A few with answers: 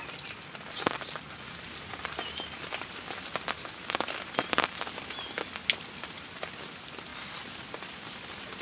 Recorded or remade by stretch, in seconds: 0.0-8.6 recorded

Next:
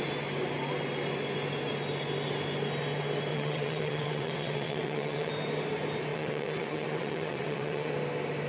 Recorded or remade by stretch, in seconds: 0.0-3.3 recorded; 3.3-5.3 remade; 5.3-6.1 recorded; 6.1-7.9 remade; 7.9-8.5 recorded

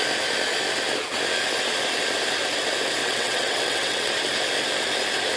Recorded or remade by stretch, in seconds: 0.0-3.0 recorded; 3.0-4.1 remade; 4.1-5.4 recorded

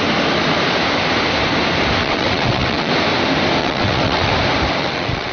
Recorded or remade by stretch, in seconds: 0.0-2.0 recorded; 2.0-2.9 remade; 2.9-3.6 recorded; 3.6-4.3 remade; 4.3-4.8 recorded; 4.8-5.3 remade